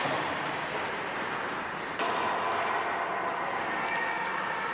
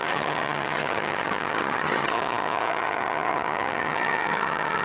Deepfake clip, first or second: second